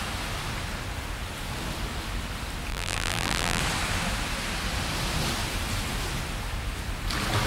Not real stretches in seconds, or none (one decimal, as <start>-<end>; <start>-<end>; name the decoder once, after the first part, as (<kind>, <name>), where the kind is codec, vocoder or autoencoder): 2.7-3.6 (vocoder, BigVGAN v2)